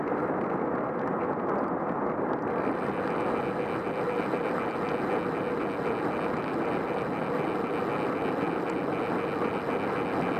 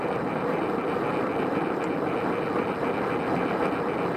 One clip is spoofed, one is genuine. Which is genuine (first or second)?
first